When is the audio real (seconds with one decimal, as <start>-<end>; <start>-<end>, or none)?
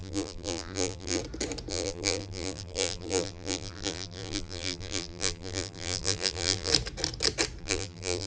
1.2-1.7; 6.7-7.6